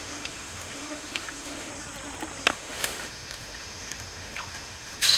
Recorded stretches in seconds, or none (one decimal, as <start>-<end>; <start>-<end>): 1.7-2.5